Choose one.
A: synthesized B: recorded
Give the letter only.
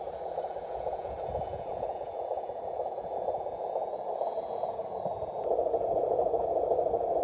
A